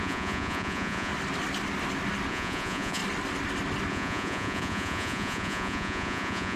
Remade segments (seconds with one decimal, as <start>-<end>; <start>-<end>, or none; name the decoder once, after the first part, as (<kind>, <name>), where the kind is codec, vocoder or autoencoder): 0.0-1.1 (vocoder, Vocos); 2.3-3.0; 3.9-6.6